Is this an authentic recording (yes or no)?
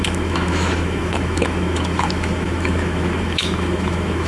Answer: no